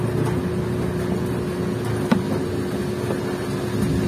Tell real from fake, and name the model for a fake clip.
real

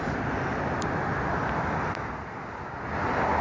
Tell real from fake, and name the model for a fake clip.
real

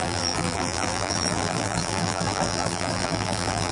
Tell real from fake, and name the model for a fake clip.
fake, vocoder, BigVGAN v2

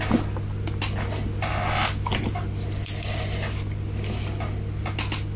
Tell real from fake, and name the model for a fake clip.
real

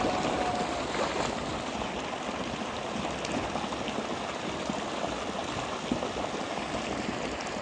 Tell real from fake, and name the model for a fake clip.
real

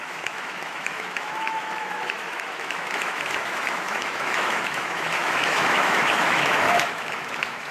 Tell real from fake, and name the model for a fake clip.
fake, autoencoder, DAC-VAE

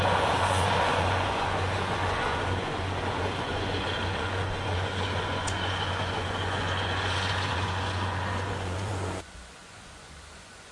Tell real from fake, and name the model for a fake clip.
fake, vocoder, Vocos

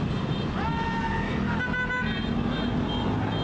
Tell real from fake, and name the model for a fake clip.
real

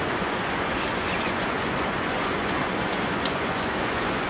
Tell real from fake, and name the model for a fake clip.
fake, vocoder, Vocos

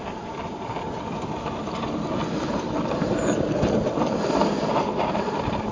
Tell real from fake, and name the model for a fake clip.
fake, vocoder, BigVGAN v2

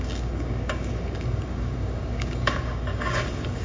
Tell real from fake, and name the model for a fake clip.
fake, codec, DAC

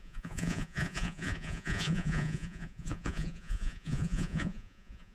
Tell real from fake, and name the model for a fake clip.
fake, vocoder, Vocos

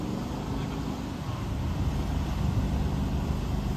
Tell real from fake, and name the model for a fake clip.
real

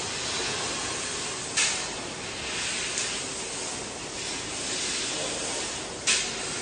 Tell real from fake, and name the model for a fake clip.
real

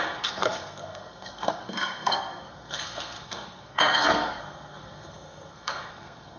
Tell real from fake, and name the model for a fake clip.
fake, codec, SNAC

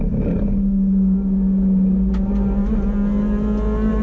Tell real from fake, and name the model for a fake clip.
real